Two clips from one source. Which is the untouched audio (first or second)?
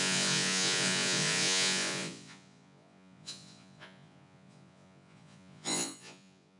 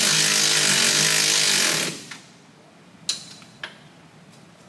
second